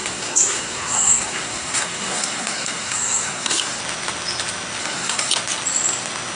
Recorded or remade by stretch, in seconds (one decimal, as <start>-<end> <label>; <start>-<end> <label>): 0.0-3.8 remade; 3.8-4.8 recorded; 4.8-5.3 remade; 5.3-6.3 recorded